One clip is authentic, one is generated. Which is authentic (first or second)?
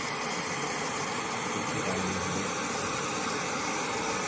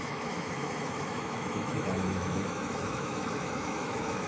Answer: first